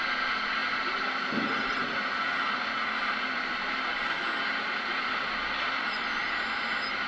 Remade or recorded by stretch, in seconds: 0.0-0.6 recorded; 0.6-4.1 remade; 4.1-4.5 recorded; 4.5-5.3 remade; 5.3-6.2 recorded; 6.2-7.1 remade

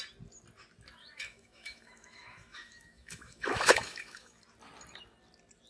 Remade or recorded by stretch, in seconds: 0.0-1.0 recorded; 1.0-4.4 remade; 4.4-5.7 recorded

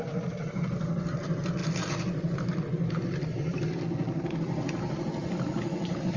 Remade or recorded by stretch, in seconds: 0.0-6.2 recorded

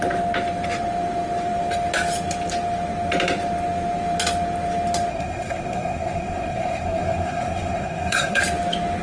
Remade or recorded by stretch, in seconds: 0.0-5.1 recorded; 5.1-8.4 remade; 8.4-9.0 recorded